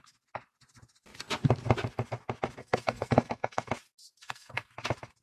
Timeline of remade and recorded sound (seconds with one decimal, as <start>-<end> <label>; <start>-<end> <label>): 0.0-2.6 recorded; 2.6-3.7 remade; 3.7-4.2 recorded; 4.2-4.7 remade; 4.7-5.2 recorded